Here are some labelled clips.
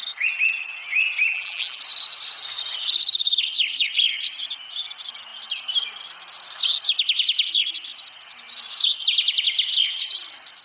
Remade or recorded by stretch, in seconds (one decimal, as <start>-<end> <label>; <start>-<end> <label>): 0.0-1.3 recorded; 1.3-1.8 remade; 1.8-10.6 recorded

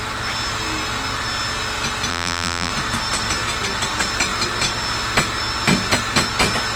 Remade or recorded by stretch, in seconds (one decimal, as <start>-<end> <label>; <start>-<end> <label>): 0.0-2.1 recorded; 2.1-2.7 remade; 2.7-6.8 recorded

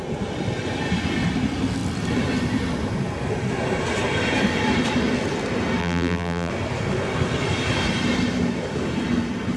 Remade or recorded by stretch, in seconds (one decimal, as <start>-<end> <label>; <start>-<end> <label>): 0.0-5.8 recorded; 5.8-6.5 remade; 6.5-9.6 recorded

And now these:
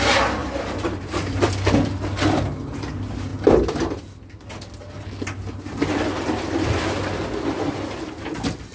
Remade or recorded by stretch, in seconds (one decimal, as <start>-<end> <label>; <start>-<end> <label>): 0.0-0.4 recorded; 0.4-1.5 remade; 1.5-8.7 recorded